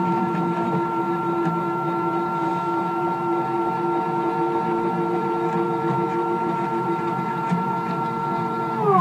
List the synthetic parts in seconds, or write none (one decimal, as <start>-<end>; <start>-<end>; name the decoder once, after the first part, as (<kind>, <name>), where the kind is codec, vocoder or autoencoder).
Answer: 0.0-9.0 (vocoder, BigVGAN v2)